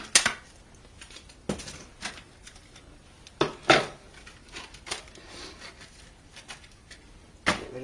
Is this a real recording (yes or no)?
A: yes